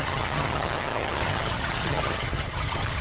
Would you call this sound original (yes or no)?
no